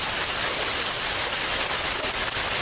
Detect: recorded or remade recorded